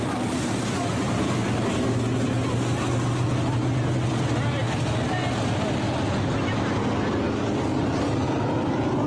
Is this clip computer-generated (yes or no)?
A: no